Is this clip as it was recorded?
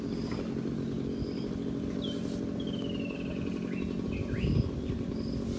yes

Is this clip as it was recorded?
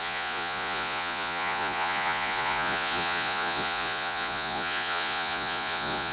no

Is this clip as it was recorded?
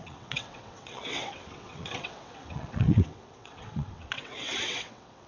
no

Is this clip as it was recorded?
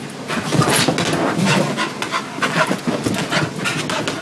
yes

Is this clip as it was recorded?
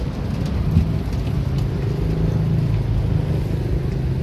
yes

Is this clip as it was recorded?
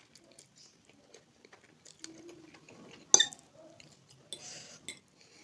yes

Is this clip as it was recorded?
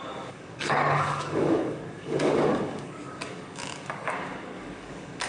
no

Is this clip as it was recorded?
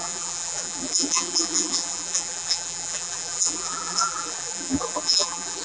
no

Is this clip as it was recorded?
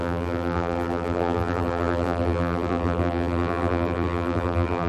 no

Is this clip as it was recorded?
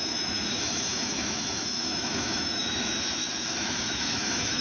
no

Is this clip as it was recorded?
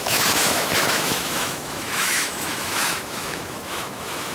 no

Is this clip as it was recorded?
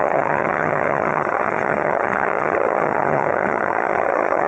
no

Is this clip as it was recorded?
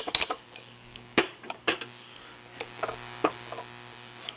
no